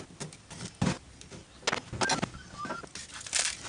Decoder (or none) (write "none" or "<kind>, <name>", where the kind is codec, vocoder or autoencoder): none